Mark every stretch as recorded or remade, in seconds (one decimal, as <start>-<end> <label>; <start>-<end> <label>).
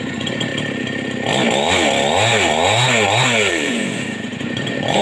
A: 0.0-0.5 remade; 0.5-3.5 recorded; 3.5-5.0 remade